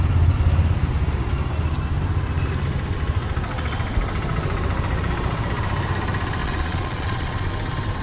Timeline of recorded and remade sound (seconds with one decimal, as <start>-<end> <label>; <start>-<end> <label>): 0.0-6.4 recorded; 6.4-7.5 remade; 7.5-8.0 recorded